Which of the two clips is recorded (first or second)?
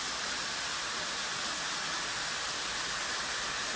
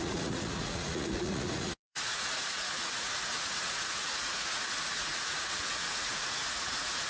first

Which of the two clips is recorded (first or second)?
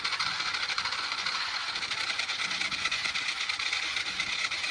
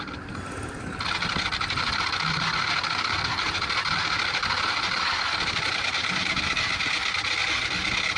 second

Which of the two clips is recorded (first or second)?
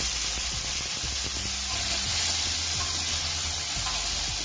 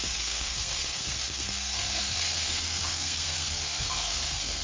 first